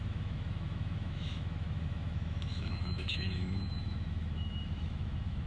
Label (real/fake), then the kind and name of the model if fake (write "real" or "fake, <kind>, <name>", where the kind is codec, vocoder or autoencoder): fake, autoencoder, DAC-VAE